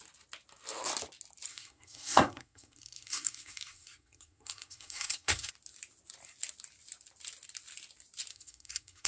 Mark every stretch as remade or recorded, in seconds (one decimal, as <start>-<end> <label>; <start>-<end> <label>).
0.0-1.5 recorded; 1.5-5.5 remade; 5.5-8.3 recorded; 8.3-9.1 remade